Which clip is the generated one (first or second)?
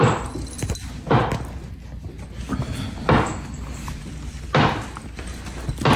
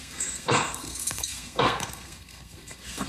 second